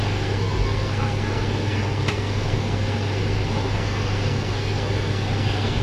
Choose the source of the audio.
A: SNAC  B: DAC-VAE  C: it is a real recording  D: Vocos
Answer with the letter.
A